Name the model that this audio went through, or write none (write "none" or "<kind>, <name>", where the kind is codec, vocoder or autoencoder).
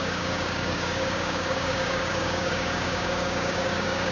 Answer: codec, DAC